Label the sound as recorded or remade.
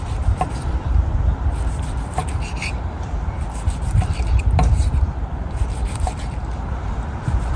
remade